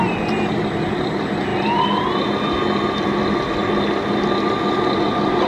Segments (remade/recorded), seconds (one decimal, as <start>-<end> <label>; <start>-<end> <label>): 0.0-5.5 recorded